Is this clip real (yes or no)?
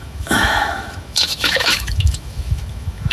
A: no